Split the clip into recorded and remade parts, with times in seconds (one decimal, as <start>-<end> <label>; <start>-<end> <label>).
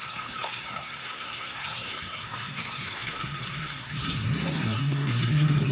0.0-5.7 remade